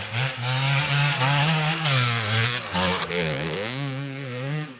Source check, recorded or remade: remade